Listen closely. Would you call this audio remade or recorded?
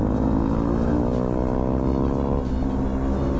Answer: recorded